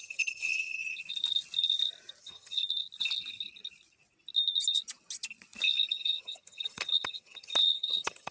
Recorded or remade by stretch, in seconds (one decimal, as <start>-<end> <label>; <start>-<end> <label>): 0.0-0.8 remade; 0.8-2.2 recorded; 2.2-2.6 remade; 2.6-5.9 recorded; 5.9-8.3 remade